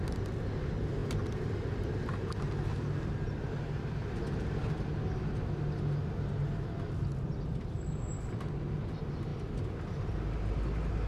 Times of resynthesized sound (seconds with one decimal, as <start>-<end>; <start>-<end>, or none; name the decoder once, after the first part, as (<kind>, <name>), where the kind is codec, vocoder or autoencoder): 1.0-1.6 (vocoder, BigVGAN v2); 4.0-4.9